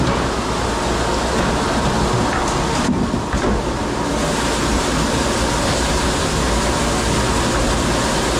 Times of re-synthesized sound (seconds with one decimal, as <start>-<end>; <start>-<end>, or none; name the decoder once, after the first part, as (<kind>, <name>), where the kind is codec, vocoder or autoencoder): none